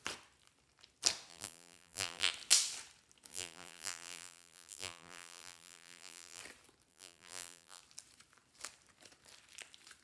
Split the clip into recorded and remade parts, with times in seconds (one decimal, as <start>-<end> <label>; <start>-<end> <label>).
0.0-1.3 recorded; 1.3-2.3 remade; 2.3-3.3 recorded; 3.3-6.4 remade; 6.4-6.9 recorded; 6.9-7.8 remade; 7.8-10.0 recorded